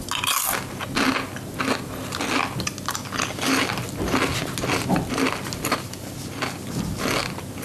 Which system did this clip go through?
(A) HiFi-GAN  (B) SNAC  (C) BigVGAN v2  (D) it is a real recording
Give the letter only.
D